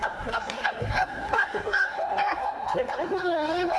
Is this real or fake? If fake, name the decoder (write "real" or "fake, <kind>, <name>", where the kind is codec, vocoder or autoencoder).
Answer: fake, codec, SNAC